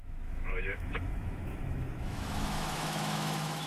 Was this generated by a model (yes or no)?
yes